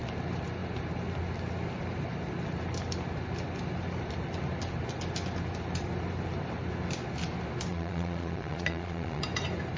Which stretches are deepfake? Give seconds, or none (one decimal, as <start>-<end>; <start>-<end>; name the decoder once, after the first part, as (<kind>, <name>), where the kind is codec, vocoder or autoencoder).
7.7-9.2 (vocoder, Vocos)